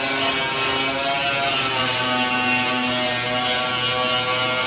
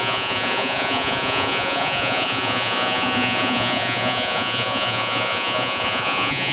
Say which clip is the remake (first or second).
second